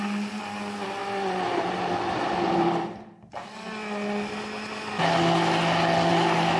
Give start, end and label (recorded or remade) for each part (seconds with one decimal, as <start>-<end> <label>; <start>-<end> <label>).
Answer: 0.0-6.6 recorded